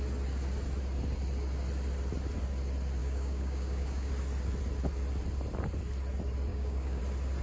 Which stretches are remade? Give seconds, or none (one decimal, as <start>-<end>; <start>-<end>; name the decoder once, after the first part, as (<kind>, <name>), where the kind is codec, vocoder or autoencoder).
3.0-4.1 (codec, DAC); 6.5-7.0